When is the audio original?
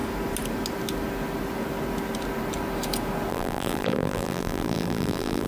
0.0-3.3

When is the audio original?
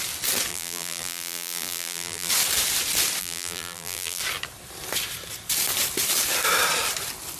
0.0-0.5; 2.3-3.2; 4.2-7.4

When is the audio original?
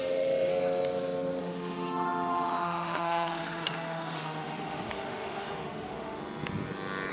0.5-1.4; 6.2-7.1